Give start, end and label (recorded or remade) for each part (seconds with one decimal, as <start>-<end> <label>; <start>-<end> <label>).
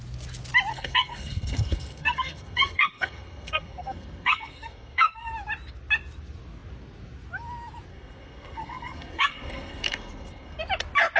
0.0-0.7 recorded; 0.7-5.3 remade; 5.3-7.9 recorded; 7.9-10.6 remade; 10.6-11.2 recorded